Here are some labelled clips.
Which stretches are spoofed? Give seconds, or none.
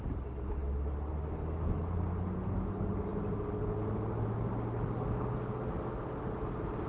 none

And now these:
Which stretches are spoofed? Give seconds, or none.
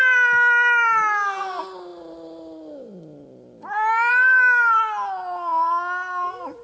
none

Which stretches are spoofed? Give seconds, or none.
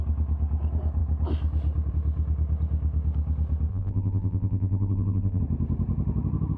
3.7-5.4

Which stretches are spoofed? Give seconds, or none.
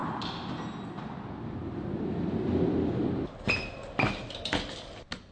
0.0-0.6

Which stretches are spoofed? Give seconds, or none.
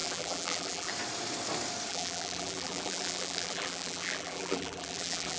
0.0-0.9; 1.9-5.4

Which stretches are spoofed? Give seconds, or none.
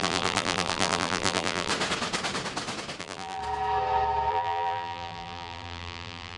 0.0-1.7; 3.0-3.4; 4.3-6.4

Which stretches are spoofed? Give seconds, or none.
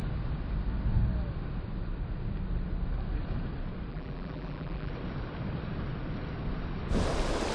3.9-4.9